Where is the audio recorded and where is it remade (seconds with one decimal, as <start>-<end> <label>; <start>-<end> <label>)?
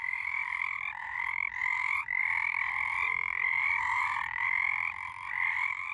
0.0-5.9 recorded